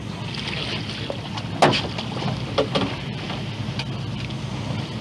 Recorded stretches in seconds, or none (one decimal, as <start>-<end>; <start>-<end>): 0.0-5.0